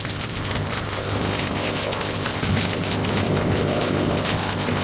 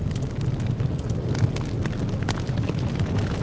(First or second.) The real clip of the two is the second